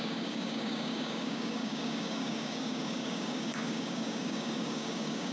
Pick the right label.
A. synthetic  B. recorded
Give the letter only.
A